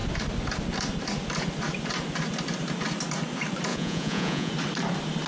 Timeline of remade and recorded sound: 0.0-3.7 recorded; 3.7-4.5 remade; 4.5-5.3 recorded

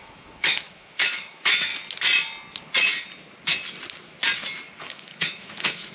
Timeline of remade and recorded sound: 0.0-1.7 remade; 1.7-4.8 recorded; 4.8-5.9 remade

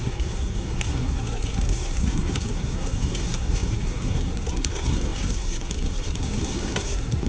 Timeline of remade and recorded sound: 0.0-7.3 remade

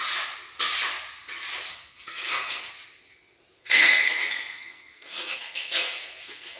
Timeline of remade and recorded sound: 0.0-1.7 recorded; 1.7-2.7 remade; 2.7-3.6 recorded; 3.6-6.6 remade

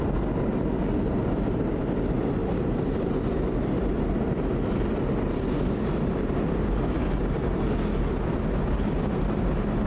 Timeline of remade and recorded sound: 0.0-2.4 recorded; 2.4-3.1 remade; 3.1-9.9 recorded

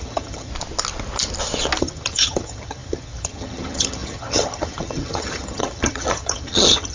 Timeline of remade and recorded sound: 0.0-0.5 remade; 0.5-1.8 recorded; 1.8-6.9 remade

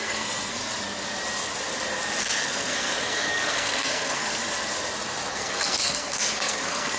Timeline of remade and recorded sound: 0.0-0.6 remade; 0.6-2.2 recorded; 2.2-4.4 remade; 4.4-5.3 recorded; 5.3-7.0 remade